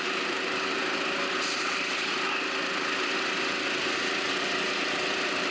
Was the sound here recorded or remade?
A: recorded